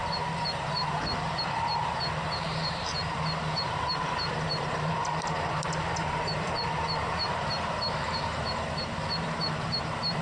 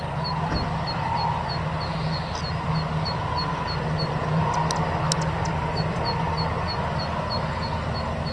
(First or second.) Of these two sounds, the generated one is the first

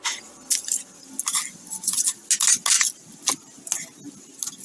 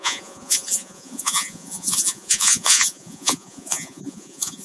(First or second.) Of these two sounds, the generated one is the second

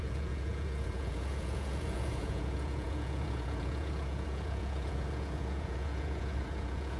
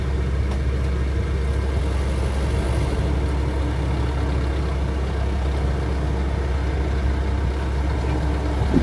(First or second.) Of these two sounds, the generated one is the first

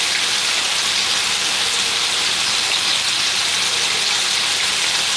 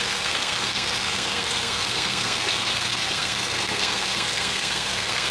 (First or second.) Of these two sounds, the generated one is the second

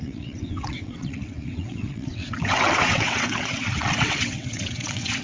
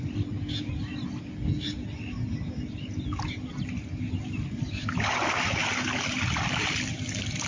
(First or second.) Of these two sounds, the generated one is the first